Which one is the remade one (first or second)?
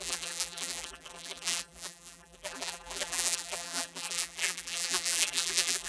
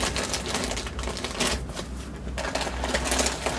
first